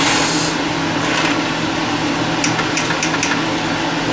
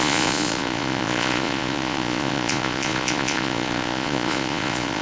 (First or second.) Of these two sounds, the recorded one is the first